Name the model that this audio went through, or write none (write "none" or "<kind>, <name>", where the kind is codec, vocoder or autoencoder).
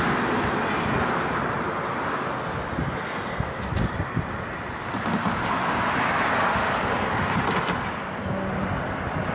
none